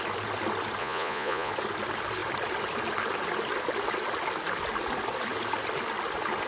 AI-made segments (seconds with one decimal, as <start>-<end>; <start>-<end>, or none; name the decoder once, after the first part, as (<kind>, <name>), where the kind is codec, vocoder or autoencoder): 0.8-1.5 (vocoder, Vocos)